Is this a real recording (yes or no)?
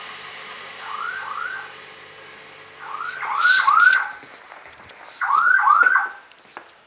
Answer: yes